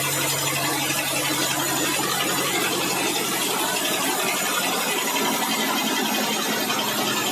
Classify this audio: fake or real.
real